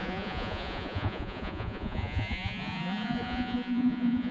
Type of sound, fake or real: fake